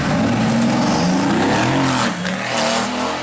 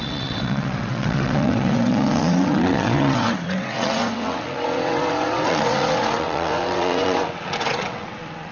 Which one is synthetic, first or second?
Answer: second